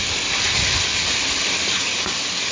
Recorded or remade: recorded